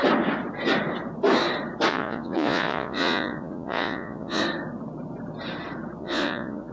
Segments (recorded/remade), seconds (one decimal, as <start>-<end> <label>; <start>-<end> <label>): 0.0-1.9 recorded; 1.9-4.4 remade; 4.4-6.0 recorded; 6.0-6.7 remade